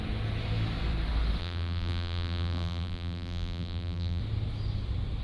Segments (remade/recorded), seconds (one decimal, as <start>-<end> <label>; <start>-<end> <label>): 0.0-1.4 recorded; 1.4-4.2 remade; 4.2-5.2 recorded